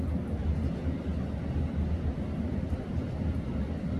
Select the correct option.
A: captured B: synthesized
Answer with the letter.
A